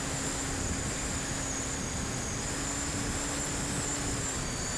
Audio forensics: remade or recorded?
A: recorded